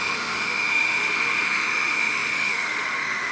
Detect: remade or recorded remade